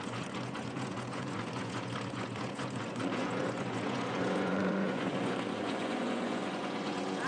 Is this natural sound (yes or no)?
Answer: no